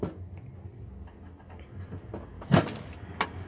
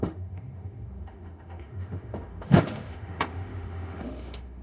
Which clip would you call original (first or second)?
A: first